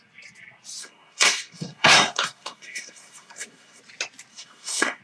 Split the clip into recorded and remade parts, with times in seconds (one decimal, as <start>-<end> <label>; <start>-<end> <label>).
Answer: 0.0-0.8 recorded; 0.8-3.8 remade; 3.8-4.3 recorded; 4.3-5.0 remade

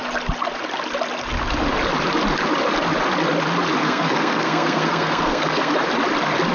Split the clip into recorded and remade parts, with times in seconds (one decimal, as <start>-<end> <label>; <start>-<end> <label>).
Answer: 0.0-3.8 recorded; 3.8-5.7 remade; 5.7-6.5 recorded

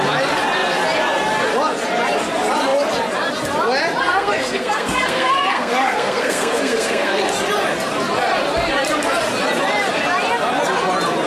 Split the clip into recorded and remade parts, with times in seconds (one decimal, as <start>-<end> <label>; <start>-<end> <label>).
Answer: 0.0-4.0 recorded; 4.0-7.2 remade; 7.2-11.3 recorded

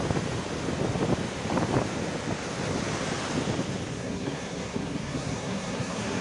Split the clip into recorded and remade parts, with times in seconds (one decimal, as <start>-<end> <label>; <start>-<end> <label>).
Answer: 0.0-3.9 recorded; 3.9-6.2 remade

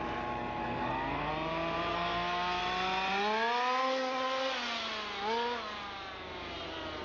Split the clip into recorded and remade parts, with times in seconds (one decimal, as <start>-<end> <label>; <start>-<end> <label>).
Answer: 0.0-0.6 recorded; 0.6-1.3 remade; 1.3-1.9 recorded; 1.9-2.6 remade; 2.6-7.0 recorded

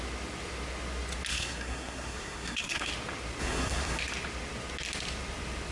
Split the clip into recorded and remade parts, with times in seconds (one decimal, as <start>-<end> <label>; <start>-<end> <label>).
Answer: 0.0-1.3 recorded; 1.3-2.9 remade; 2.9-3.4 recorded; 3.4-4.0 remade; 4.0-5.7 recorded

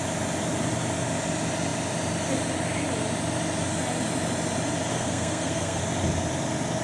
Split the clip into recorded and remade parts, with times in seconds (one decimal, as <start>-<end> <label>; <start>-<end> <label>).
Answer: 0.0-4.9 recorded; 4.9-5.8 remade; 5.8-6.8 recorded

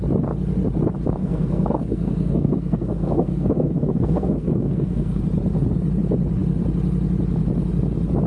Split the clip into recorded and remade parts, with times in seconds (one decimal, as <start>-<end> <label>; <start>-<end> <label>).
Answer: 0.0-1.2 recorded; 1.2-5.2 remade; 5.2-8.3 recorded